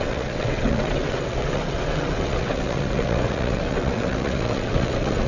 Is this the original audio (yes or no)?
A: no